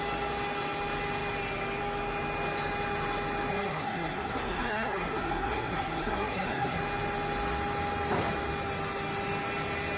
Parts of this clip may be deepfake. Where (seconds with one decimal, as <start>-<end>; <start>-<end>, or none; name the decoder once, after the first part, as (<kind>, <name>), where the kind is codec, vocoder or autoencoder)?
3.5-6.8 (codec, SNAC)